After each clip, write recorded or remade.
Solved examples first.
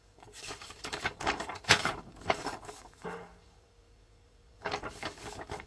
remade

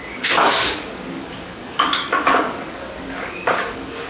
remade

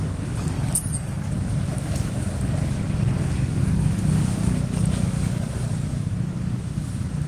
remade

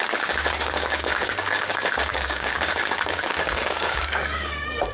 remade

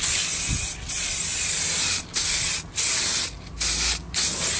recorded